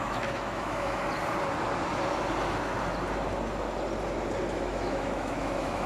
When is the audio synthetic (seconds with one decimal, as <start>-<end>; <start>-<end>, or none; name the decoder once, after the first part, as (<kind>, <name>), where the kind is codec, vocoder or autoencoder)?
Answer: 0.0-1.0 (autoencoder, DAC-VAE); 4.5-5.9